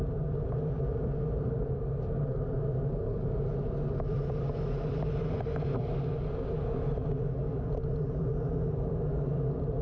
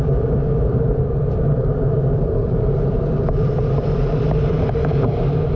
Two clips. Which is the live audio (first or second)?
first